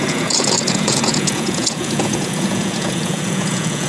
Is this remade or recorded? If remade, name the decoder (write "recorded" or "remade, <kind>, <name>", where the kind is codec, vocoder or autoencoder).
remade, vocoder, Vocos